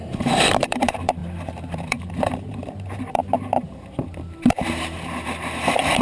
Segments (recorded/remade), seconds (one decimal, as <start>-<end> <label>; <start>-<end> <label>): 0.0-6.0 remade